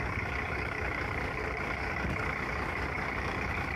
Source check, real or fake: fake